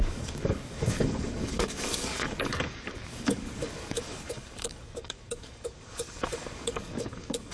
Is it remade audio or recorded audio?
remade